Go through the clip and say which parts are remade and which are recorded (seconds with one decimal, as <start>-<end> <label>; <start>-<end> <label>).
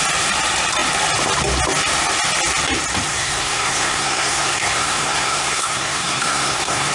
0.0-3.1 recorded; 3.1-6.9 remade